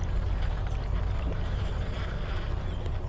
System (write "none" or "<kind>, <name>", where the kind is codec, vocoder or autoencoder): vocoder, BigVGAN v2